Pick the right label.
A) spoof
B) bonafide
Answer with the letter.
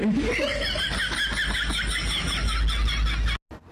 B